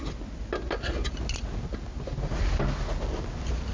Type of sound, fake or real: real